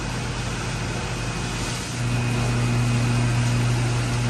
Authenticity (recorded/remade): recorded